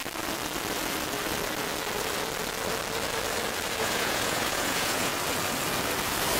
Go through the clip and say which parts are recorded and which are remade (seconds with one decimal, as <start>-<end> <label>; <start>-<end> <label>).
0.0-3.8 recorded; 3.8-5.1 remade; 5.1-6.4 recorded